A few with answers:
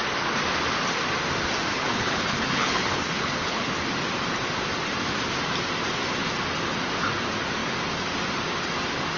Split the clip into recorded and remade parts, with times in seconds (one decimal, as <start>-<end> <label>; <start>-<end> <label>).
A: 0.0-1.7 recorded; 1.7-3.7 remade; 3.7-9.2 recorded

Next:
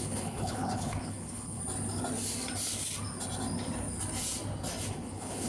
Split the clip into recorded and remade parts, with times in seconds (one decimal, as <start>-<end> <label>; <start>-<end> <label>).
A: 0.0-1.6 remade; 1.6-4.9 recorded; 4.9-5.5 remade

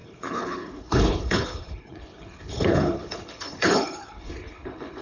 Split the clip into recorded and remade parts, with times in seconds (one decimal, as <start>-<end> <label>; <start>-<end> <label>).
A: 0.0-5.0 remade

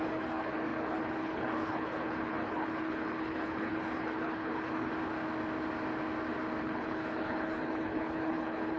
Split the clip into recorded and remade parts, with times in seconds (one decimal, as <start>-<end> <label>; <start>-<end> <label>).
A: 0.0-4.9 remade; 4.9-6.6 recorded; 6.6-8.8 remade